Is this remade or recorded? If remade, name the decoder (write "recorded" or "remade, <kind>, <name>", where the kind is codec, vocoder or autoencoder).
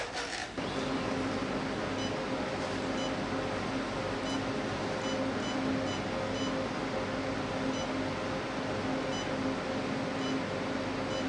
recorded